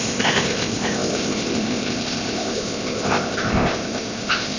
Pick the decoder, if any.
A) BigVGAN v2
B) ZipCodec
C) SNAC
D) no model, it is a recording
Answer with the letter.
B